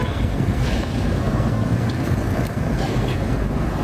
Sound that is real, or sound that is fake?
fake